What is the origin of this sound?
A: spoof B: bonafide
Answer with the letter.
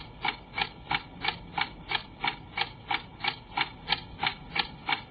B